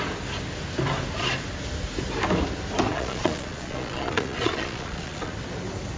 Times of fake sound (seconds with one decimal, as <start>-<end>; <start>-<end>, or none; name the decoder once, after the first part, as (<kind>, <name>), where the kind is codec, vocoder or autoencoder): 2.9-5.3 (vocoder, Vocos)

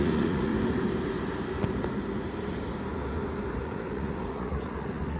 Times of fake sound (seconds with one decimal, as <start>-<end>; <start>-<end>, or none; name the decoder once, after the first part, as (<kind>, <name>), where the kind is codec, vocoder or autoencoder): 0.0-0.5 (vocoder, Vocos); 3.6-5.2